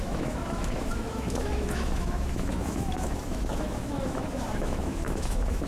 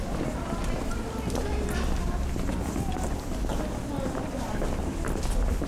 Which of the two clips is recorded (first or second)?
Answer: second